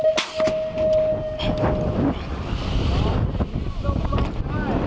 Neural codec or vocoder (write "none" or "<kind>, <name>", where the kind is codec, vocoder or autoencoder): none